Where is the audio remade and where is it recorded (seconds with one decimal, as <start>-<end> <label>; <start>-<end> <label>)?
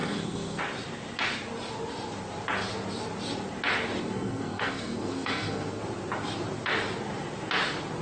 0.0-0.6 remade; 0.6-4.0 recorded; 4.0-5.8 remade; 5.8-8.0 recorded